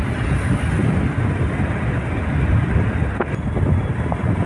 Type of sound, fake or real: real